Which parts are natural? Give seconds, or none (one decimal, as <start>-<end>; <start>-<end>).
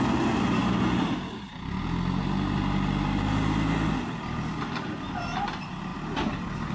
0.0-6.7